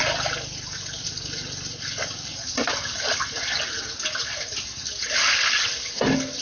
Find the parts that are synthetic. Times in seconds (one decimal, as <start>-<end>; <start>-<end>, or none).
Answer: 1.1-2.3; 5.8-6.4